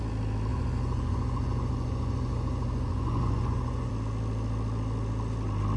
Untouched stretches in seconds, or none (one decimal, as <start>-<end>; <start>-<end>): 0.0-0.5; 3.9-5.8